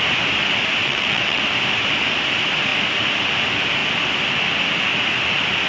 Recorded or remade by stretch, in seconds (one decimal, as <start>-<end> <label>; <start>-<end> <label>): 0.0-0.8 recorded; 0.8-1.4 remade; 1.4-5.7 recorded